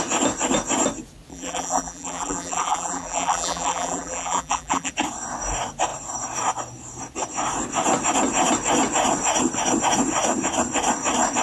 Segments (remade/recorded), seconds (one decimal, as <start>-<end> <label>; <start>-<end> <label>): 0.0-1.3 recorded; 1.3-4.9 remade; 4.9-11.4 recorded